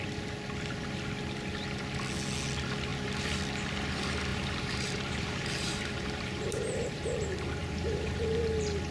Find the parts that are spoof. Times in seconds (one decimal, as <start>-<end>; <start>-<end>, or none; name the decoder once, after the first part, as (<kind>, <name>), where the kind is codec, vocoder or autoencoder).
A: 2.9-3.4 (vocoder, BigVGAN v2); 4.3-7.0; 7.6-8.2